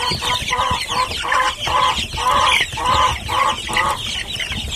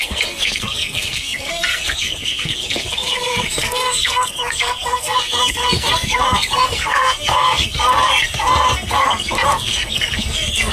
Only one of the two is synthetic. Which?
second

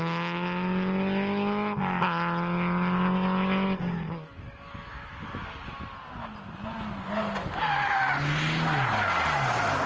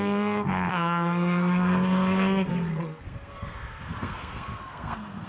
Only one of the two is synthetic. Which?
second